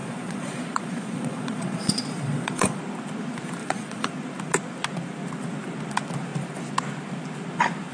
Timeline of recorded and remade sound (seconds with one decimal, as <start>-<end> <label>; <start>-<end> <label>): 0.0-2.8 remade; 2.8-3.6 recorded; 3.6-4.1 remade; 4.1-7.9 recorded